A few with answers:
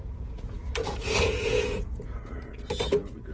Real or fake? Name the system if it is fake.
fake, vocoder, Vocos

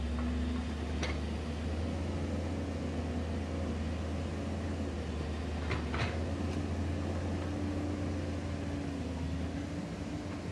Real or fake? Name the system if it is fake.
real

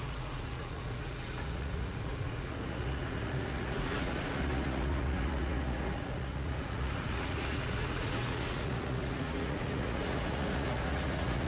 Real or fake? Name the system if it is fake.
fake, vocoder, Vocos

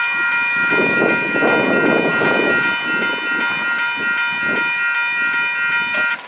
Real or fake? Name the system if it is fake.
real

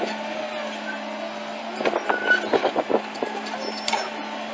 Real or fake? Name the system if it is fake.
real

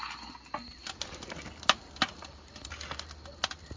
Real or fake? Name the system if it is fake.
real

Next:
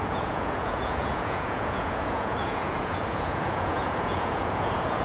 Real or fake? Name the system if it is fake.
fake, vocoder, Vocos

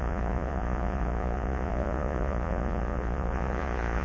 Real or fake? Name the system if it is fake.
fake, vocoder, Vocos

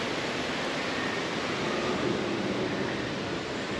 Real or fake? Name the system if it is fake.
real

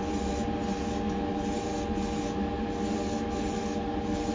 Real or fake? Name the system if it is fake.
real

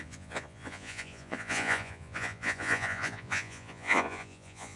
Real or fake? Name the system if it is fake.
fake, vocoder, Vocos